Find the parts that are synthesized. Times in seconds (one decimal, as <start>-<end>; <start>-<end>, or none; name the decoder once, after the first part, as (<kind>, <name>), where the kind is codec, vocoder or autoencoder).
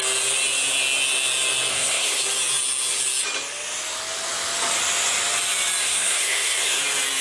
1.7-2.2 (codec, SNAC); 5.8-6.8